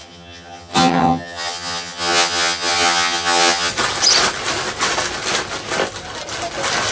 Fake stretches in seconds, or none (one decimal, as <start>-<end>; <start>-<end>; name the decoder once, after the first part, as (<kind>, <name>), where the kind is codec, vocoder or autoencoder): 0.0-3.7 (vocoder, HiFi-GAN)